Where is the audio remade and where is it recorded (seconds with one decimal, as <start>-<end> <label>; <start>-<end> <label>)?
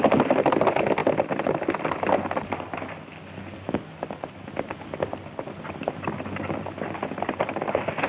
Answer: 0.0-8.1 recorded